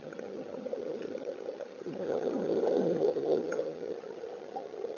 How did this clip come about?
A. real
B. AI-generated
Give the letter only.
B